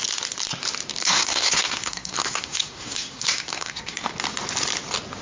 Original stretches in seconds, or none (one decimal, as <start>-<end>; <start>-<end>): 0.0-1.0; 4.1-5.2